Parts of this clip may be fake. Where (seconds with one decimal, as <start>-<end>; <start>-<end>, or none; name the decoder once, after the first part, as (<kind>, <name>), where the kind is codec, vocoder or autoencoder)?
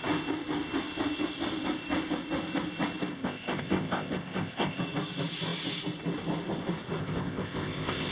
3.1-4.8 (codec, ZipCodec); 7.0-8.1